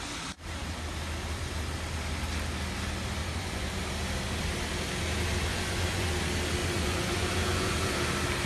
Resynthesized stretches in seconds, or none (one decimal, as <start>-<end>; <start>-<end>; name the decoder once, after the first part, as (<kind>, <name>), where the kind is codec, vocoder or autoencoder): 3.2-3.8 (vocoder, Vocos); 5.5-6.1; 6.6-7.9